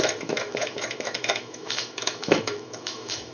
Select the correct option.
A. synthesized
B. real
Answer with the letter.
A